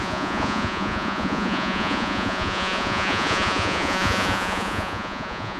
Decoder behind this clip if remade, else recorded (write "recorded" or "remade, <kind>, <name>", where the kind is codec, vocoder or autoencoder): remade, vocoder, Vocos